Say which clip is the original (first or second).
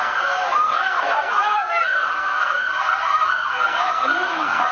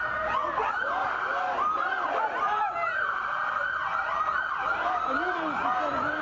second